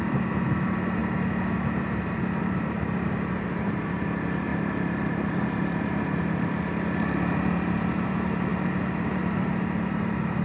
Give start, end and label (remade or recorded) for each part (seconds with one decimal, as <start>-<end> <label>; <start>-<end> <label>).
0.0-1.0 remade; 1.0-2.4 recorded; 2.4-10.4 remade